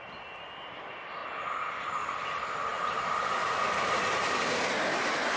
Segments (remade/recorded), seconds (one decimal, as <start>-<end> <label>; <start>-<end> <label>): 0.0-5.4 recorded